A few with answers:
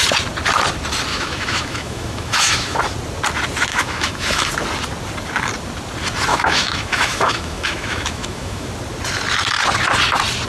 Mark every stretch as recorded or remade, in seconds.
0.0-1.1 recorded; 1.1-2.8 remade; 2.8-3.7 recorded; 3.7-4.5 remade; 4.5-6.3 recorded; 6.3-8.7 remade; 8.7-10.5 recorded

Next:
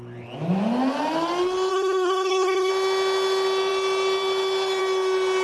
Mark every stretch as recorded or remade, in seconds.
0.0-1.7 recorded; 1.7-2.7 remade; 2.7-5.4 recorded